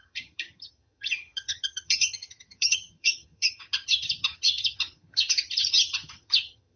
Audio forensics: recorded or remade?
remade